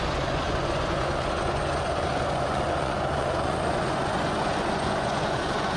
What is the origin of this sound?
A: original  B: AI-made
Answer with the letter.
B